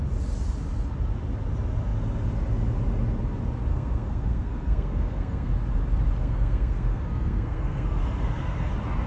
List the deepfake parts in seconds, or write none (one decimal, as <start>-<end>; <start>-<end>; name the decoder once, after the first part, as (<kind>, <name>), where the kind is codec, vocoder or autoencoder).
3.7-5.5 (codec, SNAC); 6.2-8.7